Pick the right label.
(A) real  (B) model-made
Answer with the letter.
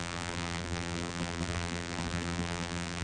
B